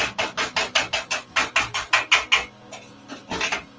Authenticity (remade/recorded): recorded